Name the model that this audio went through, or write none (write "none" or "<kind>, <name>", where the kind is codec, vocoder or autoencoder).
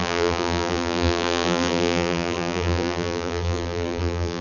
vocoder, BigVGAN v2